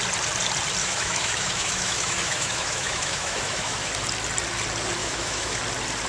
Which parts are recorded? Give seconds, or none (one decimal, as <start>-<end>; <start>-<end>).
0.0-0.8; 3.9-5.0; 5.6-6.1

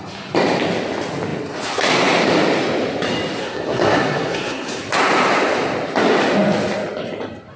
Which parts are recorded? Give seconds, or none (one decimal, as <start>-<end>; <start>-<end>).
0.0-3.4; 4.8-7.6